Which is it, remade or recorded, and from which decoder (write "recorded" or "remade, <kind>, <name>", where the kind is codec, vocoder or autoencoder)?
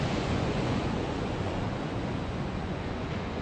remade, vocoder, Vocos